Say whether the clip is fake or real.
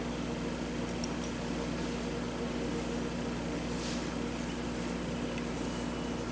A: real